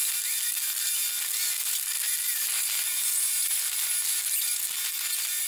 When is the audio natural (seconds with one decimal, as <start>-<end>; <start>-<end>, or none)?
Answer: 0.0-2.5; 4.6-5.5